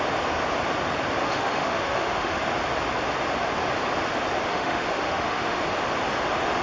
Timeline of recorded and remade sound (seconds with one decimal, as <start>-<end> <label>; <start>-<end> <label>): 0.0-1.2 recorded; 1.2-2.4 remade; 2.4-4.5 recorded; 4.5-5.6 remade; 5.6-6.6 recorded